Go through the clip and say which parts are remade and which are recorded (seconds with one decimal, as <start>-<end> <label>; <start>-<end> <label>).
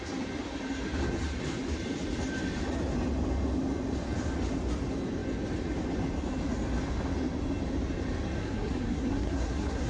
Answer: 0.0-8.4 recorded; 8.4-9.9 remade